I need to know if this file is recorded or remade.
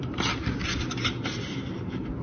recorded